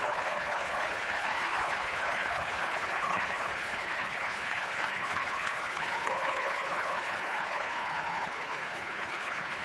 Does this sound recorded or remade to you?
remade